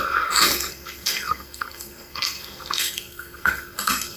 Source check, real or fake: fake